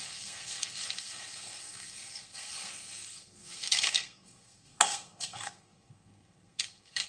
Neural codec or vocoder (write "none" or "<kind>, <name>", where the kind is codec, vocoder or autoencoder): codec, SNAC